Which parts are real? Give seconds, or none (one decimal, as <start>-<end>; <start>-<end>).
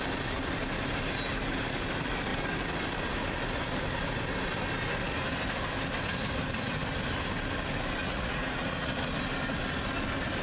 0.0-8.0; 8.9-10.4